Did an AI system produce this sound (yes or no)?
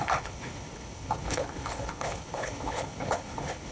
yes